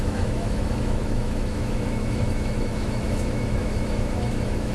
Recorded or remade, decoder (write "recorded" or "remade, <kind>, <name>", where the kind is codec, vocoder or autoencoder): remade, autoencoder, DAC-VAE